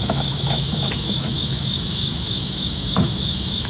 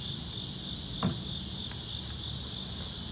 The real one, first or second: second